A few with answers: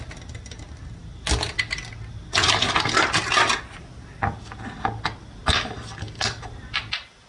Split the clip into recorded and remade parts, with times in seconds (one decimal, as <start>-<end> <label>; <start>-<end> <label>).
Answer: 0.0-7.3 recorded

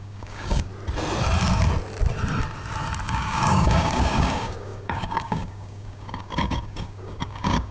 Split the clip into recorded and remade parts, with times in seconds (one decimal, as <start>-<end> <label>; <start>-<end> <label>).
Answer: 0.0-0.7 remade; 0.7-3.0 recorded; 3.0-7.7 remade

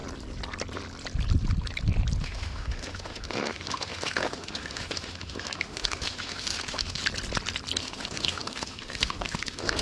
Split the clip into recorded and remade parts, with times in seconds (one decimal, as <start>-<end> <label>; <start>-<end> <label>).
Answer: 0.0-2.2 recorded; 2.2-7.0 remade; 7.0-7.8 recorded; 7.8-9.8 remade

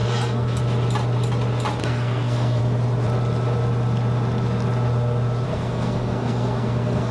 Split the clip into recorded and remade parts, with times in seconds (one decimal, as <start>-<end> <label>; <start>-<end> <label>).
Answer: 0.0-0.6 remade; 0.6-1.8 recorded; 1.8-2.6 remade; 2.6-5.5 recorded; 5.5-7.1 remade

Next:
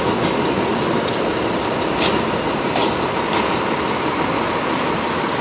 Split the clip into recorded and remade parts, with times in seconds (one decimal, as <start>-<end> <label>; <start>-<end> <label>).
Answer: 0.0-5.4 recorded